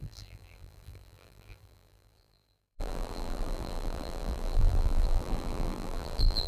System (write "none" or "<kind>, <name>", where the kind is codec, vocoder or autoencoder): vocoder, BigVGAN v2